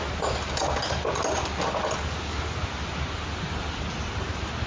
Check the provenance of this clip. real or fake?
real